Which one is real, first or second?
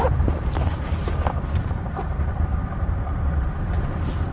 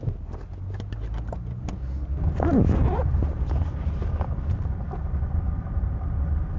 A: second